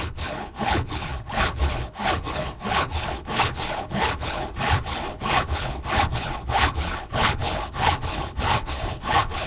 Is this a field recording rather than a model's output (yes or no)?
no